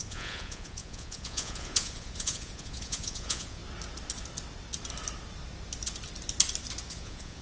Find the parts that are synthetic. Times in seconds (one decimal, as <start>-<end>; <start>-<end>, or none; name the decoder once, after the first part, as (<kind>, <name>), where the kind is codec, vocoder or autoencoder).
0.0-3.6 (vocoder, Vocos); 6.9-7.4